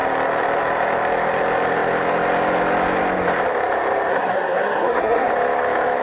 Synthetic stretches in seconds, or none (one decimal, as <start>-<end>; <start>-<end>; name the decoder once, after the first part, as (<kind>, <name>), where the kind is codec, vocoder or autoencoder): 4.1-5.3 (codec, SNAC)